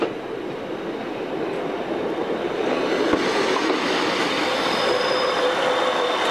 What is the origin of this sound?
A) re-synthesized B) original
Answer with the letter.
B